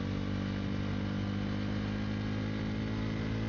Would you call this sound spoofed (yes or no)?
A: no